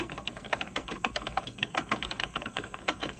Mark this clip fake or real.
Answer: fake